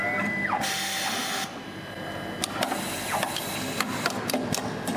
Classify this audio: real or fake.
real